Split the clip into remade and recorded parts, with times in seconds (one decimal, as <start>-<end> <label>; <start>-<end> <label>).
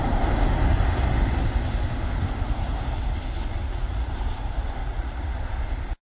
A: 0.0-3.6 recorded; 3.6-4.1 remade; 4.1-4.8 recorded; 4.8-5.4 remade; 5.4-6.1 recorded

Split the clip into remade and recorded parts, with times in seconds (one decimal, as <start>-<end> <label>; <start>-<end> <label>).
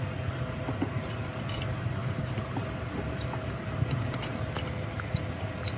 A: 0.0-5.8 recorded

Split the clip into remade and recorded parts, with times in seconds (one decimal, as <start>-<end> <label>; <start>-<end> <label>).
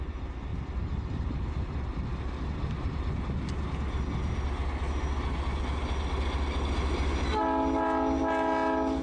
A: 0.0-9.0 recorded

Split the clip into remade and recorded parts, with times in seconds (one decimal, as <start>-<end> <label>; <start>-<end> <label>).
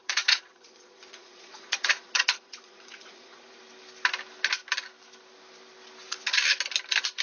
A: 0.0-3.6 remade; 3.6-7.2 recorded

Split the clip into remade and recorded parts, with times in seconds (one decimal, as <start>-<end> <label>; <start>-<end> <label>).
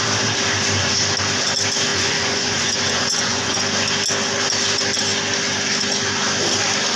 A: 0.0-1.9 recorded; 1.9-3.6 remade; 3.6-7.0 recorded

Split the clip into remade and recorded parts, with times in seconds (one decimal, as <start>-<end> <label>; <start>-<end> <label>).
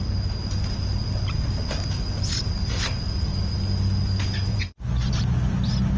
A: 0.0-4.5 recorded; 4.5-5.1 remade; 5.1-6.0 recorded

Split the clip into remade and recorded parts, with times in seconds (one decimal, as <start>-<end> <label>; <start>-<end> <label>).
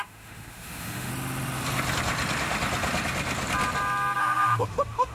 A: 0.0-1.1 remade; 1.1-4.2 recorded; 4.2-5.1 remade